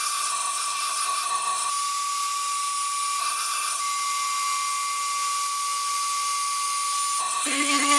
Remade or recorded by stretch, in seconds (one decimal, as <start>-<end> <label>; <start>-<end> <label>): 0.0-1.7 remade; 1.7-3.2 recorded; 3.2-3.8 remade; 3.8-7.2 recorded; 7.2-8.0 remade